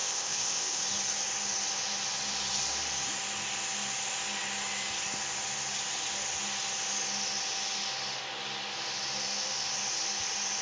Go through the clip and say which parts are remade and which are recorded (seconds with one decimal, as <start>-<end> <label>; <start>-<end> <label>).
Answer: 0.0-0.8 remade; 0.8-10.6 recorded